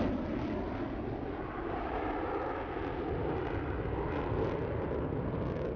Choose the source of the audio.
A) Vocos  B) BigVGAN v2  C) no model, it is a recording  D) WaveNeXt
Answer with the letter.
C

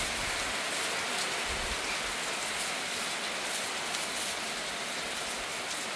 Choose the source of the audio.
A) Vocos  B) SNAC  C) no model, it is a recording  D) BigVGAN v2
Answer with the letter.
C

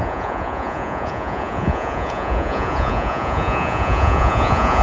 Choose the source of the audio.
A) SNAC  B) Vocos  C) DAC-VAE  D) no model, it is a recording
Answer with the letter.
B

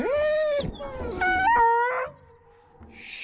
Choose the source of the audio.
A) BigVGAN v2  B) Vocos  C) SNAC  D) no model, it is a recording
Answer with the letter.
D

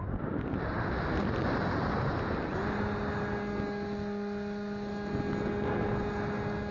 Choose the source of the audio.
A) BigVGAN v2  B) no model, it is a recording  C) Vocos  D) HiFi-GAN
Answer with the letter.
B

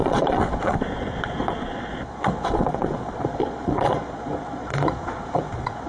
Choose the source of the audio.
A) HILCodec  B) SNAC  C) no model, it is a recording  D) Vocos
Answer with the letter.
D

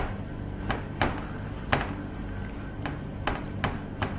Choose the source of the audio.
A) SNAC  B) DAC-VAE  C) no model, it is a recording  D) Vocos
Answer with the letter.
C